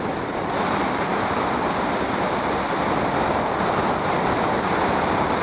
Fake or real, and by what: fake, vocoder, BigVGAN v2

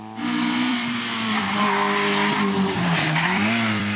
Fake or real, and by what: fake, vocoder, BigVGAN v2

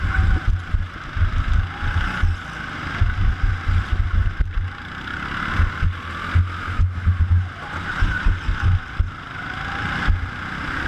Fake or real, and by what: real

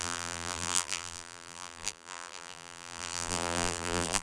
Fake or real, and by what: fake, vocoder, BigVGAN v2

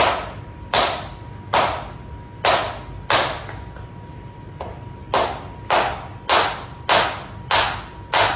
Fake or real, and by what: real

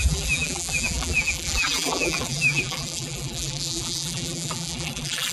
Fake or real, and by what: fake, vocoder, BigVGAN v2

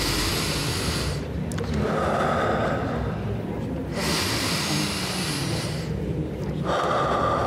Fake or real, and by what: real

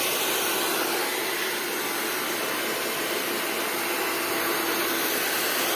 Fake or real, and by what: real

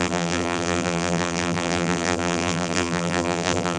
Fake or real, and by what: fake, vocoder, BigVGAN v2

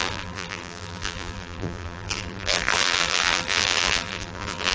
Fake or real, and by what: fake, vocoder, BigVGAN v2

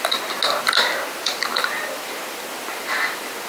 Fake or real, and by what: real